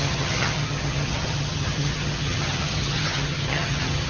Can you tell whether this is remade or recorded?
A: remade